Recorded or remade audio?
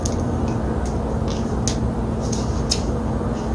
recorded